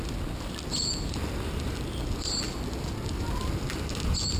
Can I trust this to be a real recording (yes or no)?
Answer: yes